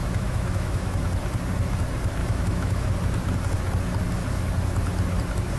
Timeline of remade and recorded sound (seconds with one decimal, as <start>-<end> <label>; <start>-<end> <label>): 0.0-1.0 remade; 1.0-2.2 recorded; 2.2-2.9 remade; 2.9-5.6 recorded